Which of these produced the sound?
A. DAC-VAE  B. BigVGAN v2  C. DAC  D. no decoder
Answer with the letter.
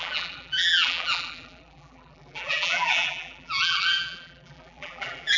B